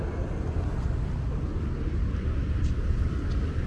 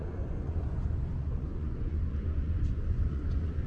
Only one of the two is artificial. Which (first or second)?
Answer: second